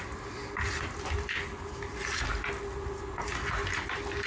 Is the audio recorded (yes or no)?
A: yes